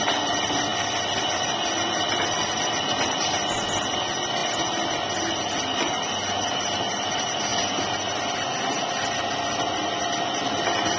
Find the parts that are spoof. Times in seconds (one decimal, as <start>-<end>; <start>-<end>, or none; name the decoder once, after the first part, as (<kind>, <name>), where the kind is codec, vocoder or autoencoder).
none